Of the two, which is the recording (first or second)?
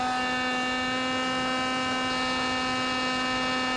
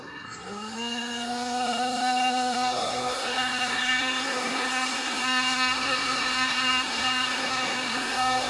first